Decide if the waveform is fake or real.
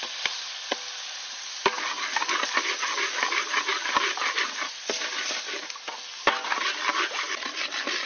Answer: real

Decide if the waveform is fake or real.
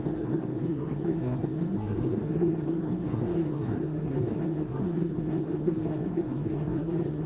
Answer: fake